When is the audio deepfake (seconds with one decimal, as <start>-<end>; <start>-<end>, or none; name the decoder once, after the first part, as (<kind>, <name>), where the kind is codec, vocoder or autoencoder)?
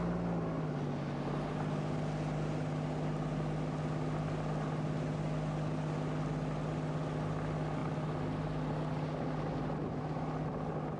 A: none